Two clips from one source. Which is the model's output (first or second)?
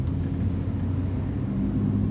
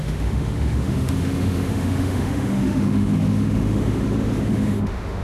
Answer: second